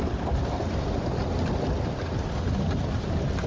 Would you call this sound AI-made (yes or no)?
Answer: no